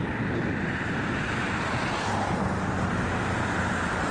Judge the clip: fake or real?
real